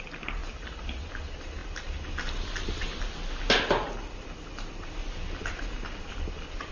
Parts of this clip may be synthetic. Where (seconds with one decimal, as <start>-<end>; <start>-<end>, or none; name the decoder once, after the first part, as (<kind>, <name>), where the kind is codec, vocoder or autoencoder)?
none